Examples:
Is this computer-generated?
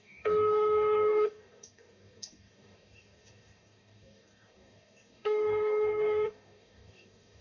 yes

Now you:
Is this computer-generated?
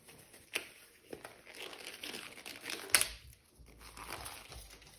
no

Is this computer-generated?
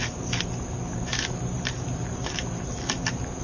yes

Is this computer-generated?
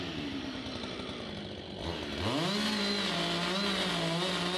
no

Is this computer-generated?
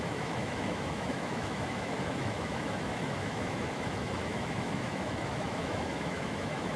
yes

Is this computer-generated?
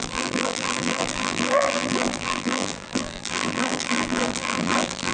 yes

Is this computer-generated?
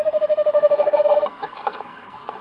yes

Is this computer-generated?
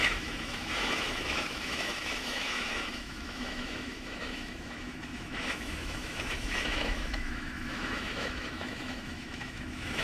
yes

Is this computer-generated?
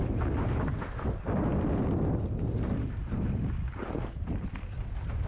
no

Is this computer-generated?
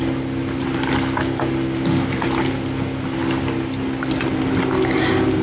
no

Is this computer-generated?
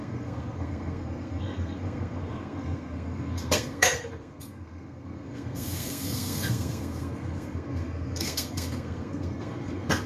yes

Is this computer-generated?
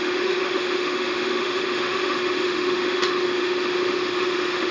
yes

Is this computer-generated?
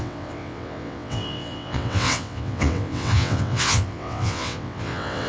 yes